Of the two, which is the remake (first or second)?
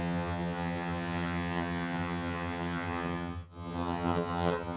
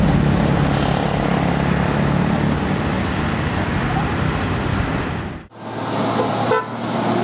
first